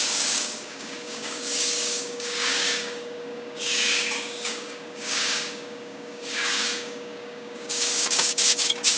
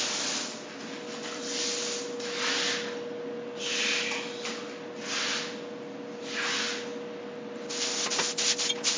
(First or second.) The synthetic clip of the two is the first